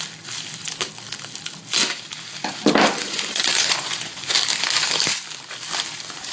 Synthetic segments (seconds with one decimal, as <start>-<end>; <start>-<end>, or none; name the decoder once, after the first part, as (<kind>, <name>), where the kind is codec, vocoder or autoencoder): 3.0-4.3 (vocoder, Vocos)